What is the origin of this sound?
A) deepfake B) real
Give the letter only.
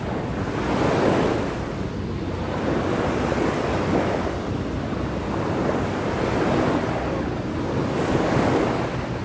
B